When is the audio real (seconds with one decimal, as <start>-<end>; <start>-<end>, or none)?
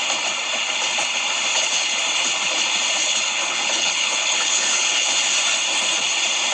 0.0-1.5; 2.0-3.0; 5.1-6.5